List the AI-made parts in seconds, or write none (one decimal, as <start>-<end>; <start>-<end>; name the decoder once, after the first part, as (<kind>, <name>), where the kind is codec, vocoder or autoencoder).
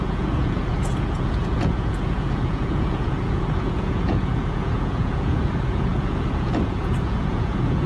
0.0-7.9 (vocoder, Vocos)